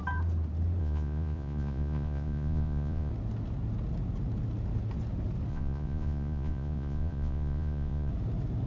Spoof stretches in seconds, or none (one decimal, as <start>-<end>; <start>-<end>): 0.8-3.1; 5.5-8.1